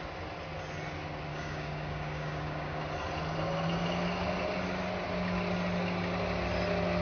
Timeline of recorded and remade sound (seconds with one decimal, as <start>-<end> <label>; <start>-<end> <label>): 0.0-1.3 recorded; 1.3-2.8 remade; 2.8-7.0 recorded